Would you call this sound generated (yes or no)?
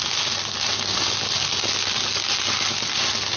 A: no